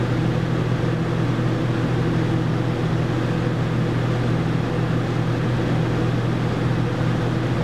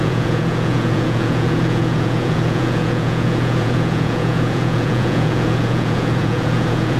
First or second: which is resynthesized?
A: second